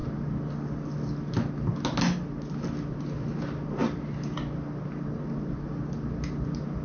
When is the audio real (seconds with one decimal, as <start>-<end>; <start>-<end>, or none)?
0.0-6.8